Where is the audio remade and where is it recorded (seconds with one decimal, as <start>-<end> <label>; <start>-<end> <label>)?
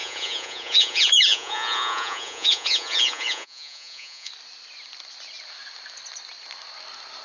0.0-4.3 remade; 4.3-7.2 recorded